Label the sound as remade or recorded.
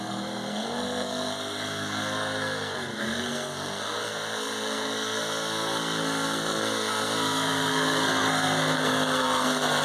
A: remade